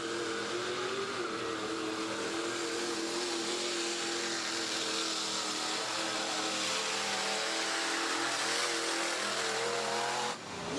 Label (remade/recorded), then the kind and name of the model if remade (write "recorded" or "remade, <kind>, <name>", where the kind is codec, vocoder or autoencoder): recorded